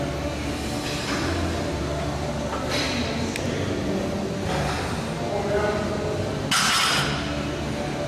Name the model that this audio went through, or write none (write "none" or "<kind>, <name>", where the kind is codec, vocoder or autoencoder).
none